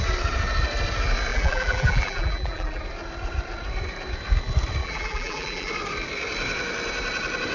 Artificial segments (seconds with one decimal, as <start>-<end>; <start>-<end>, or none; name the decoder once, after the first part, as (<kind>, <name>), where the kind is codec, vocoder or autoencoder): 1.3-2.8 (vocoder, BigVGAN v2); 4.8-5.7